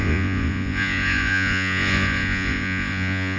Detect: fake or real fake